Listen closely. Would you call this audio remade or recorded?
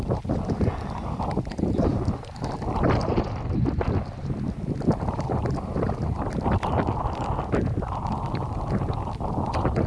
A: recorded